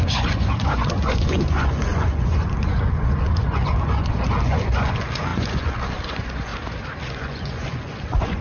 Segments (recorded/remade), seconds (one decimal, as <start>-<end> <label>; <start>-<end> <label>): 0.0-6.5 remade; 6.5-7.1 recorded; 7.1-8.4 remade